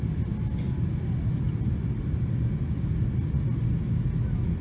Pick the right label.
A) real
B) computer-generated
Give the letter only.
A